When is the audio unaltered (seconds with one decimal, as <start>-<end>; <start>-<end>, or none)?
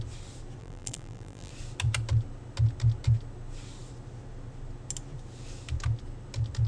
0.0-0.6; 1.5-6.7